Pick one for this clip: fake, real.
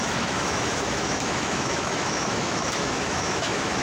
fake